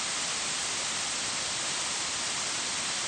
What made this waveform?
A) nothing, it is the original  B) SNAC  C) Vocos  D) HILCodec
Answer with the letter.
A